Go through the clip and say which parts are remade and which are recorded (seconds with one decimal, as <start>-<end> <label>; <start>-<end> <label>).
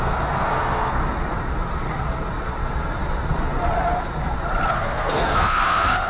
0.0-1.0 remade; 1.0-4.7 recorded; 4.7-6.1 remade